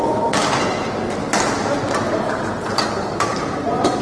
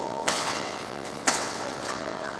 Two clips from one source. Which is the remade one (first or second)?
second